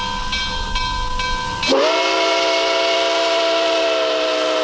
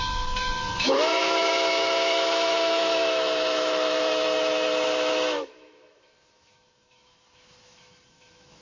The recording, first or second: first